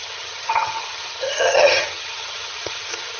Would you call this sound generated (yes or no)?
yes